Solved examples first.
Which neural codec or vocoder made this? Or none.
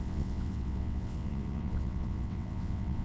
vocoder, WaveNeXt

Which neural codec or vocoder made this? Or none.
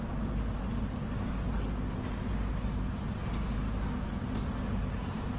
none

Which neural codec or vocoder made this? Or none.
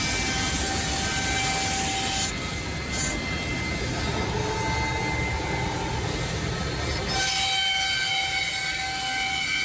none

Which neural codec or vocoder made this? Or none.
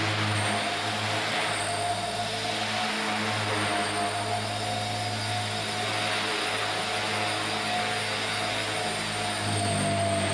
none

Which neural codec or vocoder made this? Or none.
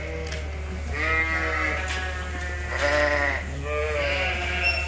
none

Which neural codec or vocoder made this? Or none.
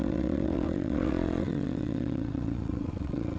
vocoder, WaveNeXt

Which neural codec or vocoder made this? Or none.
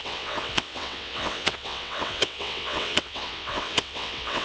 vocoder, WaveNeXt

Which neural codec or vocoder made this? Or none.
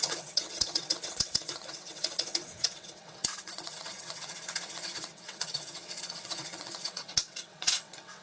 vocoder, WaveNeXt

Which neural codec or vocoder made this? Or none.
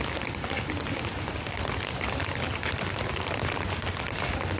none